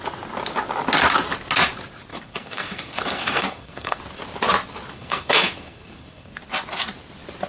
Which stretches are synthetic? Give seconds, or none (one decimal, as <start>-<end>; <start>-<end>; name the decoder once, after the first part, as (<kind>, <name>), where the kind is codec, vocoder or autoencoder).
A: 2.1-4.0 (codec, SNAC); 4.9-6.4